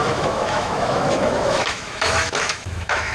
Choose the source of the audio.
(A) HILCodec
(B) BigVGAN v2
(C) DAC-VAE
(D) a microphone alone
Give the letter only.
C